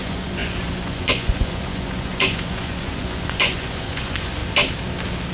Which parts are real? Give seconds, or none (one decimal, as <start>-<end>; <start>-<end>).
4.4-5.3